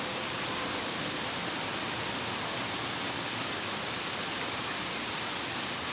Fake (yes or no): yes